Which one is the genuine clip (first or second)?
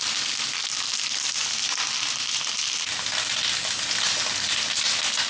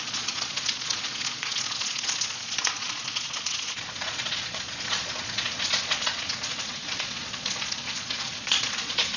first